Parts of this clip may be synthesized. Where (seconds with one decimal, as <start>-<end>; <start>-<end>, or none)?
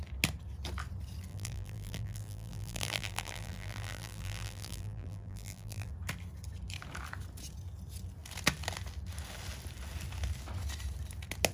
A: 1.3-5.9